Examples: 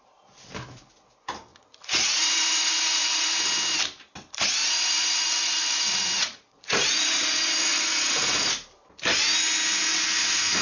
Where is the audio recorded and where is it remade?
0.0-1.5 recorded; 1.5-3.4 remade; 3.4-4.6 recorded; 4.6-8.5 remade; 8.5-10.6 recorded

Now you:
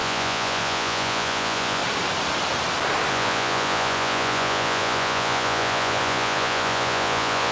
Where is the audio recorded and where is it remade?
0.0-1.8 remade; 1.8-3.1 recorded; 3.1-7.5 remade

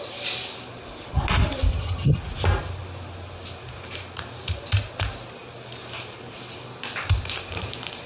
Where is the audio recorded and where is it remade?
0.0-1.7 recorded; 1.7-2.2 remade; 2.2-8.1 recorded

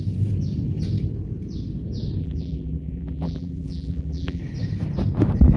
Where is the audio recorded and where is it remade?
0.0-2.2 recorded; 2.2-4.4 remade; 4.4-5.6 recorded

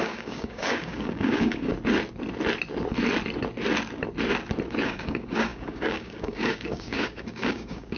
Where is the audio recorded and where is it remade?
0.0-1.7 remade; 1.7-4.7 recorded; 4.7-8.0 remade